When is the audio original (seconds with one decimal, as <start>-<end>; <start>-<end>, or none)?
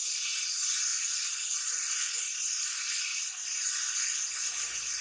0.0-5.0